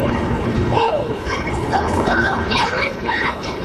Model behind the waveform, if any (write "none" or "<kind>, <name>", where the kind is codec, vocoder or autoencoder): codec, HILCodec